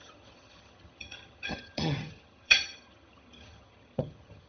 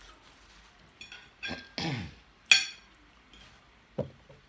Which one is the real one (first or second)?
second